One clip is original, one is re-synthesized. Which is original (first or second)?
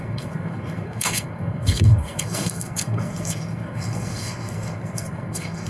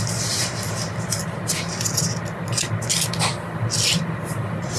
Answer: second